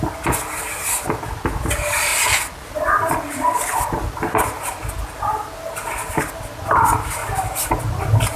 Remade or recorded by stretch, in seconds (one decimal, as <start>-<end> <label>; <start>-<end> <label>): 0.0-8.4 recorded